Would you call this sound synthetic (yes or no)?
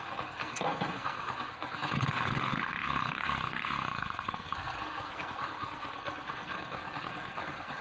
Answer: yes